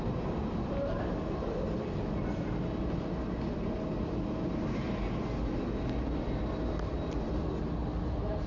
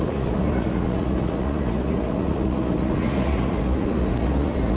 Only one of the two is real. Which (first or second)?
first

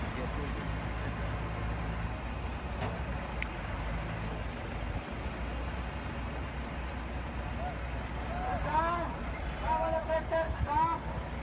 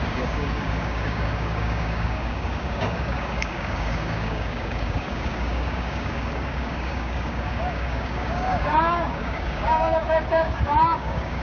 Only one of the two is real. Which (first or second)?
first